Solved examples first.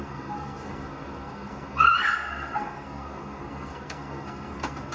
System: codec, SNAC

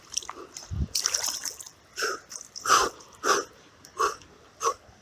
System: none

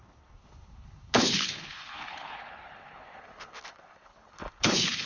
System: codec, HILCodec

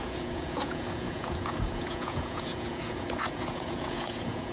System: vocoder, Vocos